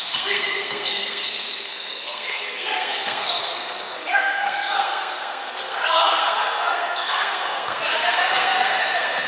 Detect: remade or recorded remade